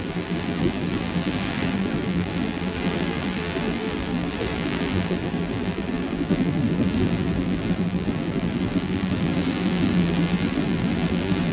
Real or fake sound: fake